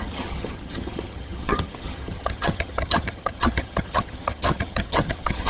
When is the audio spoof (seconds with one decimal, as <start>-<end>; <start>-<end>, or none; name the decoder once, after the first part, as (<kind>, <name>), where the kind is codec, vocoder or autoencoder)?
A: 0.0-5.5 (vocoder, HiFi-GAN)